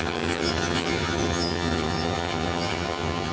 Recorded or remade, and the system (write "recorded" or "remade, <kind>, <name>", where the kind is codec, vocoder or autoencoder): remade, vocoder, HiFi-GAN